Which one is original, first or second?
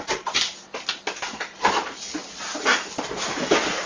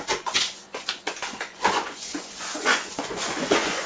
first